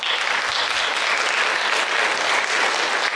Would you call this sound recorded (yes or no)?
yes